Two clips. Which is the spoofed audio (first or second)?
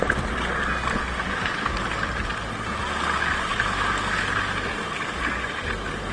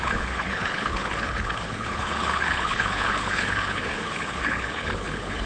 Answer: second